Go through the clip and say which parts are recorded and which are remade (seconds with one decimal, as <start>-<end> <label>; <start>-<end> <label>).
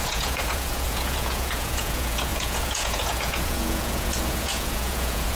0.0-5.3 remade